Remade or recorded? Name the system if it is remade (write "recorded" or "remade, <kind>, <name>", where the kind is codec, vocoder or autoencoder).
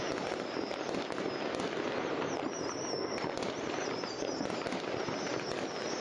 recorded